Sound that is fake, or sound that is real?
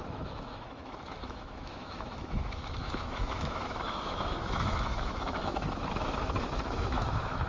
fake